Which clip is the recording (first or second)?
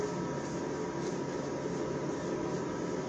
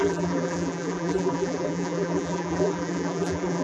first